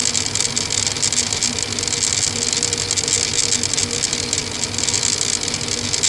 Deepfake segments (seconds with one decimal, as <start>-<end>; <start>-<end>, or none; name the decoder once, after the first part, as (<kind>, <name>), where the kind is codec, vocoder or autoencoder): none